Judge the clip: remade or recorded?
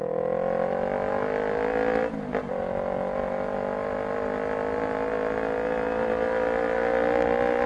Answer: recorded